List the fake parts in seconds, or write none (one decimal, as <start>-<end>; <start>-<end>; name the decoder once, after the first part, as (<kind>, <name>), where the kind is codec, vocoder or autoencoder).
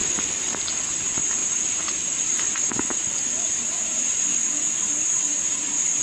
none